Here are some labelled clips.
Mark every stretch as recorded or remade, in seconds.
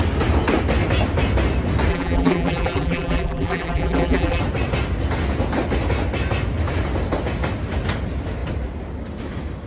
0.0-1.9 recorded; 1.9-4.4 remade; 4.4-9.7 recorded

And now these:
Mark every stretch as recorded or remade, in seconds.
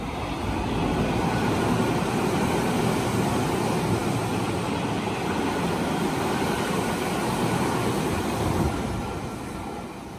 0.0-10.2 recorded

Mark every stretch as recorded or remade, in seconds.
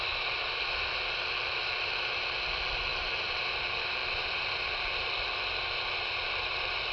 0.0-0.4 recorded; 0.4-2.2 remade; 2.2-2.9 recorded; 2.9-3.4 remade; 3.4-4.0 recorded; 4.0-4.7 remade; 4.7-6.9 recorded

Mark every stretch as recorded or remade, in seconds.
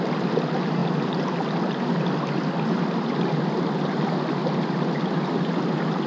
0.0-6.1 recorded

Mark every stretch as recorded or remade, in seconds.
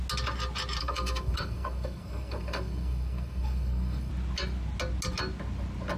0.0-0.8 recorded; 0.8-4.1 remade; 4.1-6.0 recorded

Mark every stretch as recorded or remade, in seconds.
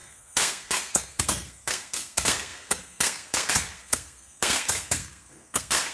0.0-5.9 remade